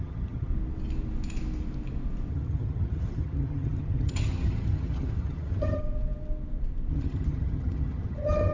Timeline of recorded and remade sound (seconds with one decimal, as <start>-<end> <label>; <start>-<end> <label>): 0.0-0.5 remade; 0.5-2.3 recorded; 2.3-5.8 remade; 5.8-6.9 recorded; 6.9-8.5 remade